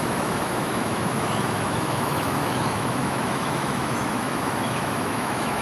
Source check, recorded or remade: remade